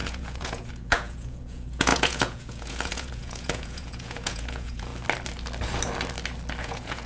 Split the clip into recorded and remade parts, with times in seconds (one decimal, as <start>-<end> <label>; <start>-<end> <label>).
0.0-4.9 remade; 4.9-6.6 recorded; 6.6-7.1 remade